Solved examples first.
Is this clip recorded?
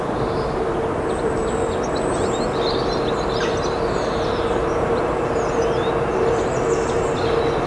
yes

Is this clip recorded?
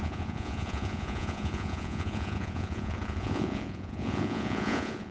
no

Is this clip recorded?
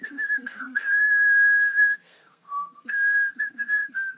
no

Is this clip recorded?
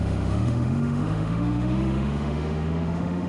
no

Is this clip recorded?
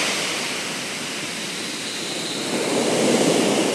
yes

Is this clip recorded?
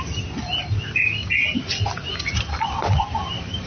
yes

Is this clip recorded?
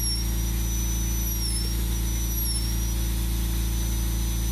yes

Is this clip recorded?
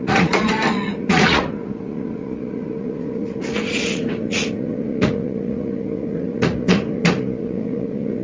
no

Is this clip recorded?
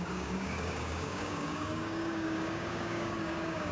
no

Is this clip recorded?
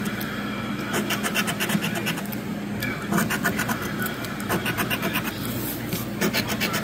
yes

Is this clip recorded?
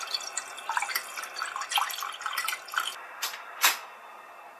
yes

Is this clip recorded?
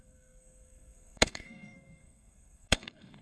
no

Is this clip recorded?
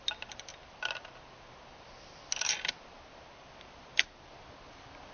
yes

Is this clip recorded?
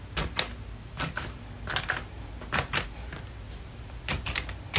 yes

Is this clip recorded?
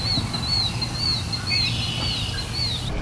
yes